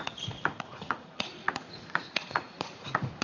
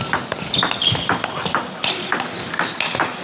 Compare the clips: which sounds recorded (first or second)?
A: second